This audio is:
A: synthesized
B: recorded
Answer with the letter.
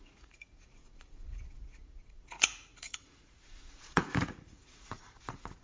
A